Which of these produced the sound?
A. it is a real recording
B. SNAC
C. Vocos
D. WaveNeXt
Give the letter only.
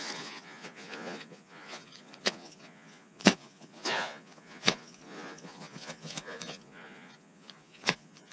C